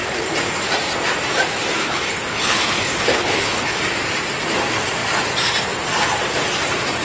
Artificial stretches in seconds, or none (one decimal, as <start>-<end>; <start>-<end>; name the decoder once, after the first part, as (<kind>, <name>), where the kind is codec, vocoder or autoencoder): 1.8-3.8 (codec, HILCodec)